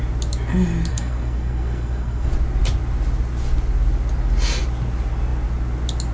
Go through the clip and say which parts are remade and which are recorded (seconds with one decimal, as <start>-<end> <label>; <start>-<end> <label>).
0.0-0.9 recorded; 0.9-2.3 remade; 2.3-6.1 recorded